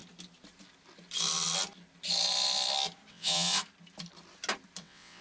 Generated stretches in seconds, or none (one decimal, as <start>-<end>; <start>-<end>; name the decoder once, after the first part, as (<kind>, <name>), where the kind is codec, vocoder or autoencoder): 3.1-3.6 (vocoder, WaveNeXt); 4.8-5.2